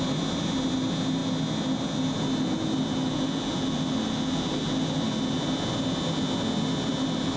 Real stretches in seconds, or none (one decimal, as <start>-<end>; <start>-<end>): 0.0-7.4